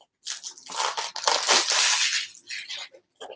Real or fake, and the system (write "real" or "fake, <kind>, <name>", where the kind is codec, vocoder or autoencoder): real